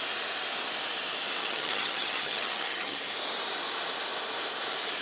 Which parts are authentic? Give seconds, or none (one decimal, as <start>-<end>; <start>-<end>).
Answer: 0.0-1.4; 3.0-5.0